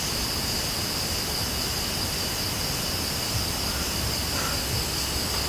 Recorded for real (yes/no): yes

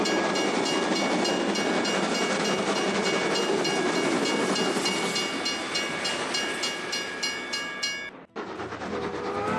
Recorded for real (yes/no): yes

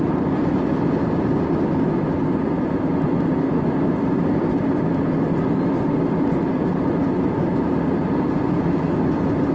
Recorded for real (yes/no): yes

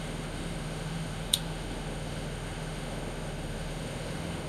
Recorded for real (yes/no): no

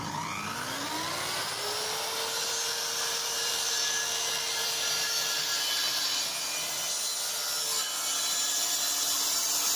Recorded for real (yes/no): yes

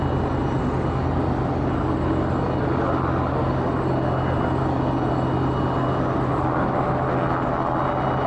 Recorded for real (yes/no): yes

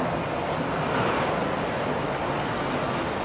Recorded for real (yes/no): yes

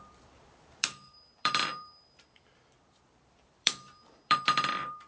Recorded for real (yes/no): no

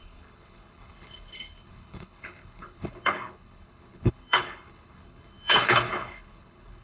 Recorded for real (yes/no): no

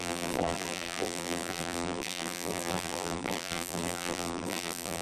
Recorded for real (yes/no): no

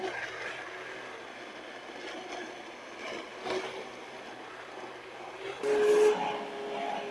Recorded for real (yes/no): yes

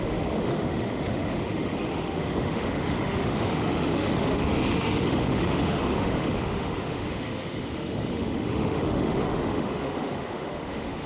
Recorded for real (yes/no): no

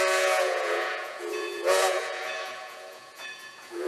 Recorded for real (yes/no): no